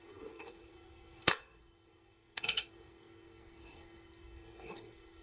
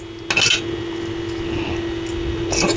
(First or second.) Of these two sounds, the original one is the second